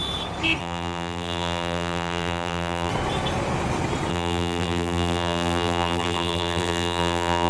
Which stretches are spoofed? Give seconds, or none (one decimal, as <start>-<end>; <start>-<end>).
0.6-2.9; 4.1-7.5